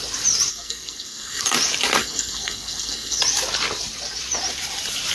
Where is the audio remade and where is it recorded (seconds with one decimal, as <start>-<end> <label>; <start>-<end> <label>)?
0.0-0.5 recorded; 0.5-1.4 remade; 1.4-2.0 recorded; 2.0-3.2 remade; 3.2-5.1 recorded